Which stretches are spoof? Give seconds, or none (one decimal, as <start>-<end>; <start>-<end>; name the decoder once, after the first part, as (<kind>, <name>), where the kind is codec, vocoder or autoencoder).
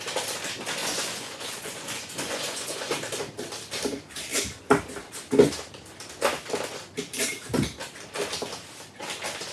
0.8-2.9 (vocoder, Vocos)